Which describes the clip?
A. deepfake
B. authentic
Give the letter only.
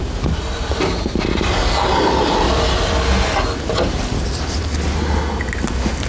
B